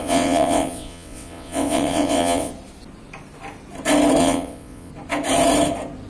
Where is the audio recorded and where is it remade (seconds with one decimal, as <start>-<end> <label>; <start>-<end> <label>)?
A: 0.0-2.5 remade; 2.5-4.2 recorded; 4.2-4.9 remade; 4.9-6.1 recorded